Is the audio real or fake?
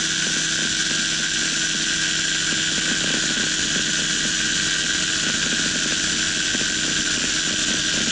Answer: real